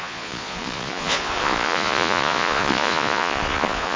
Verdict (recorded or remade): remade